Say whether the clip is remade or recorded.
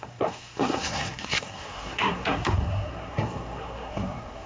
remade